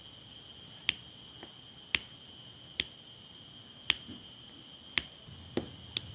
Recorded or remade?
recorded